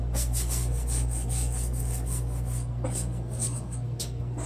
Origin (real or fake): fake